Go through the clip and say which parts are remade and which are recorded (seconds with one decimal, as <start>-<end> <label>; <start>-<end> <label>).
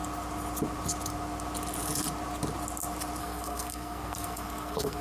0.0-3.2 recorded; 3.2-5.0 remade